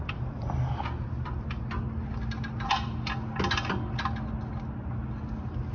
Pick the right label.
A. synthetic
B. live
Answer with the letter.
B